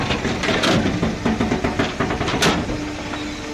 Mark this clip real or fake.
real